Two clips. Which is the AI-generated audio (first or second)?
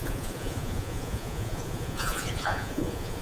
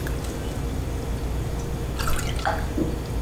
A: first